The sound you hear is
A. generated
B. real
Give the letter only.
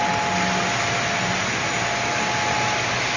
B